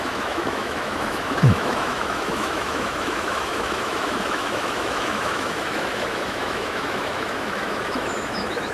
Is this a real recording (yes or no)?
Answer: no